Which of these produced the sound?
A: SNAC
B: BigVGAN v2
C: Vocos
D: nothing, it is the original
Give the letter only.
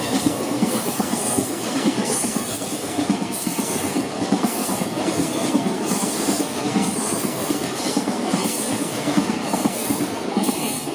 A